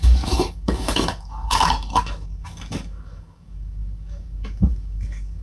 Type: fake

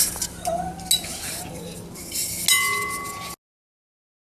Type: real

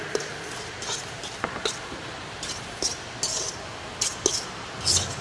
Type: real